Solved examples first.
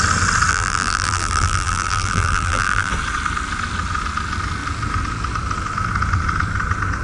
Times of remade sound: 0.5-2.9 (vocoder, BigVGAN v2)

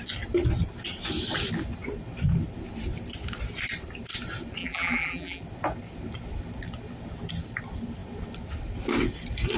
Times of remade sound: 4.6-5.4 (vocoder, BigVGAN v2)

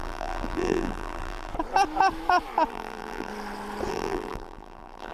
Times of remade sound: 0.0-1.5 (vocoder, BigVGAN v2); 2.7-3.3; 3.9-5.1

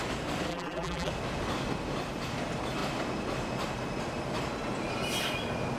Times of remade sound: 0.5-1.1 (vocoder, BigVGAN v2)